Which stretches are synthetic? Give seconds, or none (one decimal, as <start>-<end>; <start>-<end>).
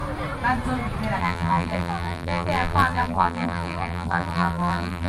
1.2-5.1